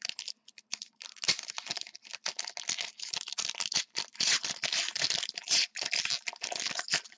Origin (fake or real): real